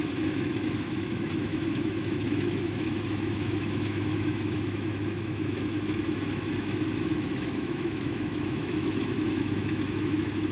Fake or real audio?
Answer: fake